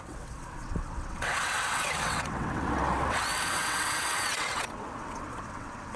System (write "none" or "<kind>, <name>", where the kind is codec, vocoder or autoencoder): vocoder, WaveNeXt